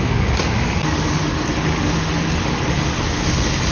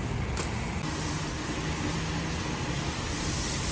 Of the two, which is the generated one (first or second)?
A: first